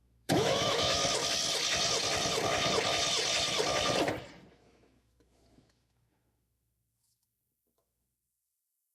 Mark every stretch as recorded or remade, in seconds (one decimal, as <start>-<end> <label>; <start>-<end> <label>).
0.0-1.0 remade; 1.0-4.5 recorded; 4.5-8.9 remade